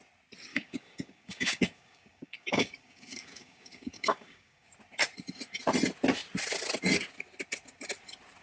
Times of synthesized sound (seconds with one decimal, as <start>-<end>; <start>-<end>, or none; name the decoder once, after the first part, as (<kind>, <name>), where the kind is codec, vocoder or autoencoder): 0.5-4.7 (codec, DAC)